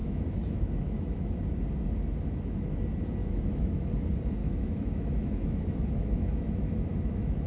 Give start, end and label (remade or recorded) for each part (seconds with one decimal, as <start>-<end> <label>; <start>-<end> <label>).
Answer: 0.0-1.4 remade; 1.4-3.2 recorded; 3.2-3.9 remade; 3.9-4.4 recorded; 4.4-7.5 remade